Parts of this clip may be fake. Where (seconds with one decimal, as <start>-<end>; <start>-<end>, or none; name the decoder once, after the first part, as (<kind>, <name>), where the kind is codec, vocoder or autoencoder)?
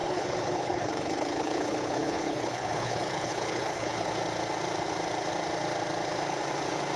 0.0-4.1 (codec, HILCodec)